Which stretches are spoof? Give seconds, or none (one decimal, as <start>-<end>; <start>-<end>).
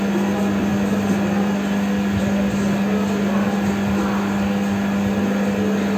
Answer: none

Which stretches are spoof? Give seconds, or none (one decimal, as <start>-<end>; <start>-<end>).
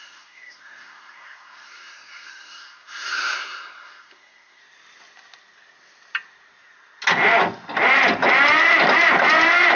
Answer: 0.0-4.6